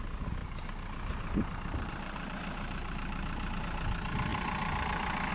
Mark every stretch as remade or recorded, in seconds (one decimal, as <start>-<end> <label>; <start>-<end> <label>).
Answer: 0.0-0.4 recorded; 0.4-3.6 remade; 3.6-5.3 recorded